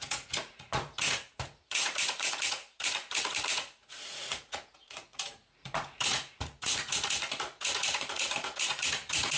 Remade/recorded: remade